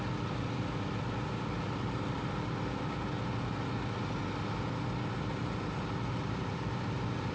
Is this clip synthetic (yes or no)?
no